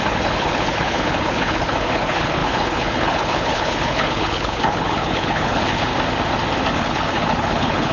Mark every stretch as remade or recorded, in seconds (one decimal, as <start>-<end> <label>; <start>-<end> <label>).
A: 0.0-5.9 remade; 5.9-6.7 recorded; 6.7-7.9 remade